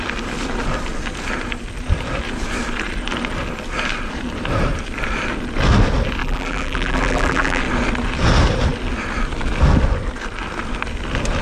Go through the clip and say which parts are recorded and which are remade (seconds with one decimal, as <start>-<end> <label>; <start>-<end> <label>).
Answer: 0.0-6.2 recorded; 6.2-7.6 remade; 7.6-11.4 recorded